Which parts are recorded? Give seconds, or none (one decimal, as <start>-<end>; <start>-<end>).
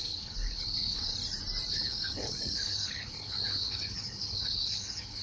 1.1-1.7